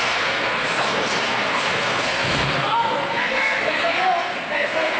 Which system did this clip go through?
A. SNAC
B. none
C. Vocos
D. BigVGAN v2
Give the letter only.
A